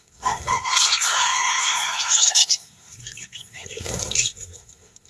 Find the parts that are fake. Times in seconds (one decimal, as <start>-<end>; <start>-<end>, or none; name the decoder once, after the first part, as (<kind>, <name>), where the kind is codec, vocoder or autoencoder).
0.0-5.1 (codec, SNAC)